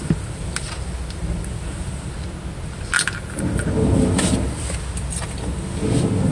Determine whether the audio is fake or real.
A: real